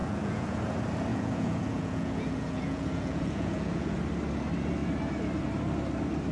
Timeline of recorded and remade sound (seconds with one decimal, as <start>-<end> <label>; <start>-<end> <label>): 0.0-0.6 remade; 0.6-1.1 recorded; 1.1-4.0 remade; 4.0-6.3 recorded